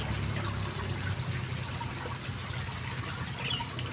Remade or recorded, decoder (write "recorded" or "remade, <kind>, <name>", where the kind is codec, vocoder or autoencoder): recorded